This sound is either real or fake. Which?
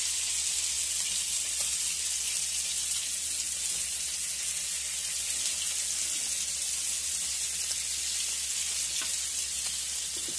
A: real